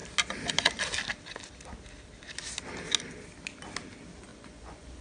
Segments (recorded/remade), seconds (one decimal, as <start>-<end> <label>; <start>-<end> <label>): 0.0-4.3 recorded; 4.3-5.0 remade